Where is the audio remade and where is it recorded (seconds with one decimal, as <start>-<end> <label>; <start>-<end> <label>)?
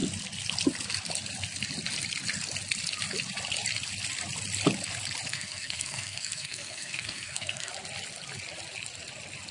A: 0.0-5.3 recorded; 5.3-7.7 remade; 7.7-9.5 recorded